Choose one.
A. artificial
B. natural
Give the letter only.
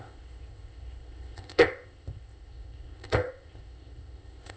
A